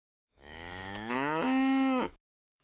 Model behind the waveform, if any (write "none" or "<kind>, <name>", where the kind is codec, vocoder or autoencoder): autoencoder, DAC-VAE